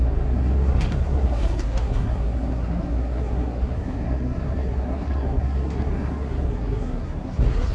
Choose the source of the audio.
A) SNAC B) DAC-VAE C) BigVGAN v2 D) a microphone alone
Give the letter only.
A